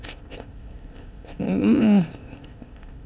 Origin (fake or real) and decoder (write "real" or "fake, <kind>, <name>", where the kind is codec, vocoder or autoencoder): fake, codec, ZipCodec